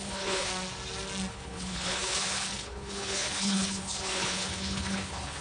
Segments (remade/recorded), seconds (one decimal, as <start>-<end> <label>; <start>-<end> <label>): 0.0-0.5 remade; 0.5-1.3 recorded; 1.3-5.4 remade